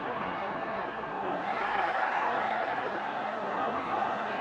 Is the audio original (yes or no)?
no